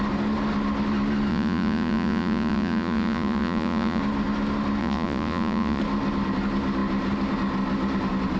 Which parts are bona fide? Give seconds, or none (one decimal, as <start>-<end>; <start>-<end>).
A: 0.0-1.3; 4.0-4.8; 5.8-8.4